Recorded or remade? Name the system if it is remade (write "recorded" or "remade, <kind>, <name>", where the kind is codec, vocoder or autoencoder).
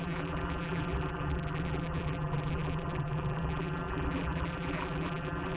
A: remade, vocoder, BigVGAN v2